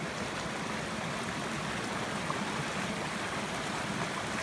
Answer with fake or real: real